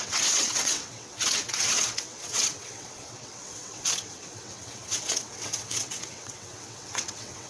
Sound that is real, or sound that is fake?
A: fake